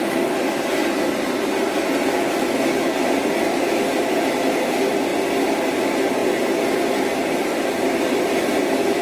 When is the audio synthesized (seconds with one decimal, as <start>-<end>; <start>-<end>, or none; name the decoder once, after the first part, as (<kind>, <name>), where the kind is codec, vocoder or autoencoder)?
7.5-9.0 (vocoder, BigVGAN v2)